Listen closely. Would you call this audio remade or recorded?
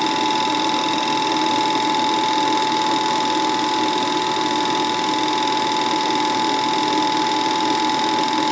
recorded